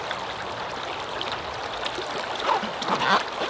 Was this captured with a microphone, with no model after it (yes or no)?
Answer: yes